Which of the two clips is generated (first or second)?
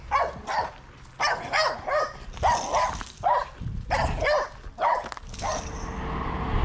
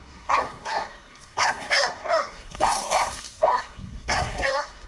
second